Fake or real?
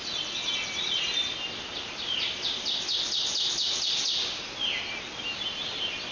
real